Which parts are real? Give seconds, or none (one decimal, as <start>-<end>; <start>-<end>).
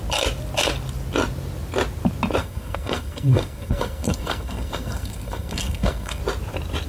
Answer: 0.0-2.4; 6.2-6.9